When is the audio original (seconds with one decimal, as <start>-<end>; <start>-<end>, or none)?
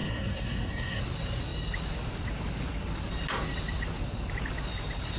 1.0-5.2